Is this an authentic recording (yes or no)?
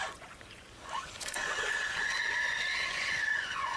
no